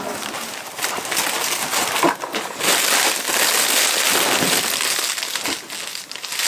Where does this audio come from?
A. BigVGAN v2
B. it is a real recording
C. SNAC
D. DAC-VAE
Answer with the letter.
B